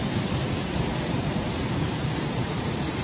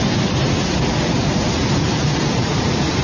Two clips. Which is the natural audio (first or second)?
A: second